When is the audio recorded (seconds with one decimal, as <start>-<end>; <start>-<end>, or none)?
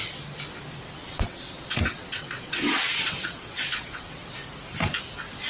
0.0-1.0; 4.3-5.5